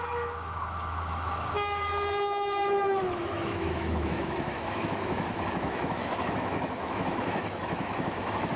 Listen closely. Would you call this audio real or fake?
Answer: fake